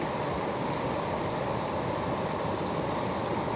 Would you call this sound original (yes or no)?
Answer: yes